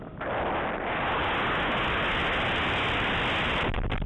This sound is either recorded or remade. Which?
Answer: recorded